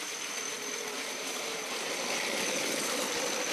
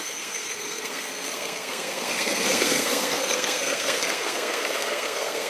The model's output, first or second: second